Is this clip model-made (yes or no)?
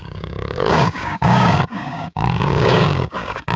yes